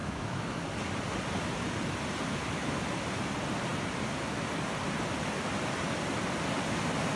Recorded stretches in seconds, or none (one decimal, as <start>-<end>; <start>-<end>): 0.6-7.2